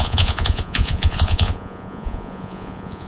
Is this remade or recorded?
remade